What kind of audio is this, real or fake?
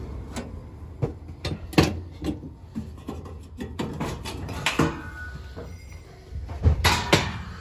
real